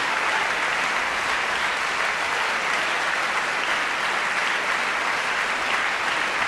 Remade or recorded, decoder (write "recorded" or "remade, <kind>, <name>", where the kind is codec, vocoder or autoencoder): recorded